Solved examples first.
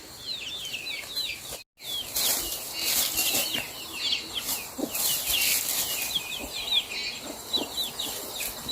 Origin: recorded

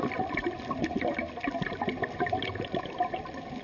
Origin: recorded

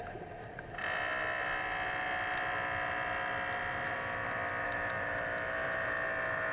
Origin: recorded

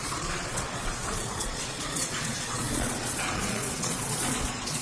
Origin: remade